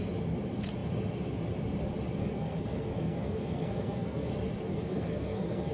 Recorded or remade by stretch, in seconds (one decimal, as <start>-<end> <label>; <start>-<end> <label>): 0.0-2.2 recorded; 2.2-4.3 remade; 4.3-4.7 recorded; 4.7-5.7 remade